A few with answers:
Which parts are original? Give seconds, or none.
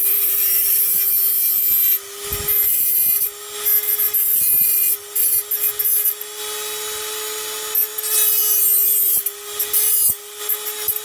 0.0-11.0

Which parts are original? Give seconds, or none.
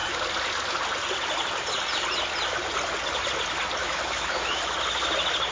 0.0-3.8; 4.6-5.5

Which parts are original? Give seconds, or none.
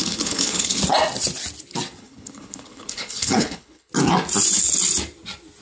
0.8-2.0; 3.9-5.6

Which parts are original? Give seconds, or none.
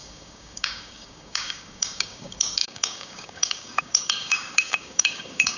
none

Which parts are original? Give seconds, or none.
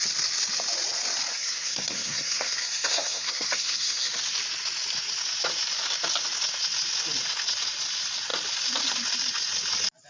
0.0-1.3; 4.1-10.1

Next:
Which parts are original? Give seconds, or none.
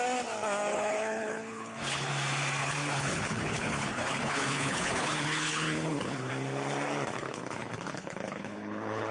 0.0-0.7; 2.1-2.6; 6.3-7.2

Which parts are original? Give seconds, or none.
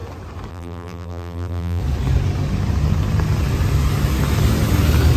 0.0-0.5; 1.8-5.2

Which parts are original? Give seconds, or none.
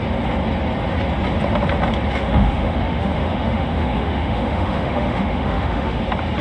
0.0-2.2; 6.0-6.4